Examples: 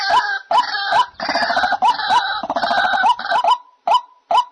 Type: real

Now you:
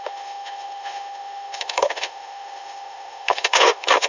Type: fake